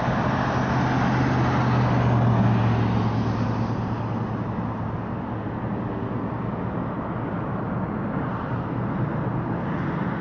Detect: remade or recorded recorded